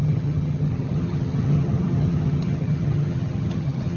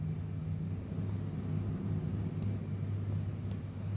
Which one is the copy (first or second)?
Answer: first